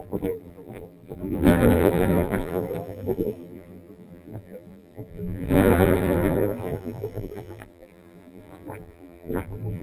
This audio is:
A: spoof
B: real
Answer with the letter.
A